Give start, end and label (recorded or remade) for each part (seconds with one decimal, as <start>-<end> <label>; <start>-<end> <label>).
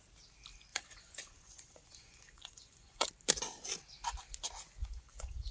0.0-0.7 recorded; 0.7-3.1 remade; 3.1-4.8 recorded; 4.8-5.5 remade